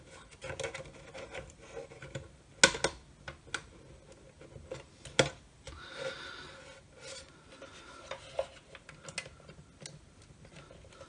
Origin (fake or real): real